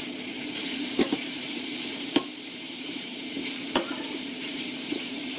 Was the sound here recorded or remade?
remade